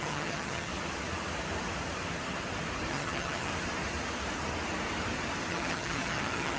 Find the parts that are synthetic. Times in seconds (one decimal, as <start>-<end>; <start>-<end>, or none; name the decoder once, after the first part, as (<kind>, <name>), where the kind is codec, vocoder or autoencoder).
0.0-0.7 (vocoder, HiFi-GAN); 2.9-3.5; 5.5-6.6